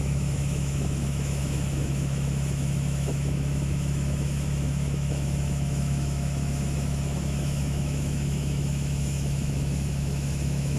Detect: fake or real fake